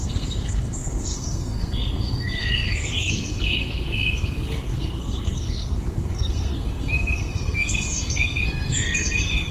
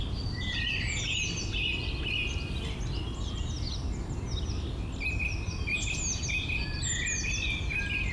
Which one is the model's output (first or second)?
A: first